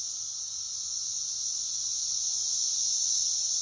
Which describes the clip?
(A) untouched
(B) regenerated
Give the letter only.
A